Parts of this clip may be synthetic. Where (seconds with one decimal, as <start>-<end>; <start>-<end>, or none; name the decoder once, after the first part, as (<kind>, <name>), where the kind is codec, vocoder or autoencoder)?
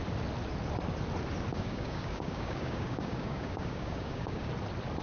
1.5-4.5 (codec, DAC)